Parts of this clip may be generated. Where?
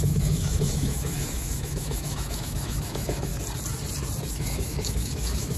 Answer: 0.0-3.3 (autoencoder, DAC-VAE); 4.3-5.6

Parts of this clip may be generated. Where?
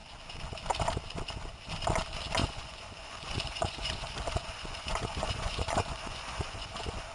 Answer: 2.4-7.1 (vocoder, Vocos)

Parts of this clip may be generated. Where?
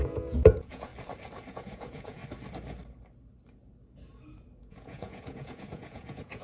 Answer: 0.0-0.9 (vocoder, Vocos); 1.5-2.2; 4.6-6.4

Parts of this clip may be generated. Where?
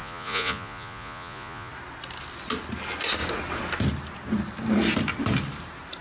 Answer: 0.0-1.7 (vocoder, Vocos)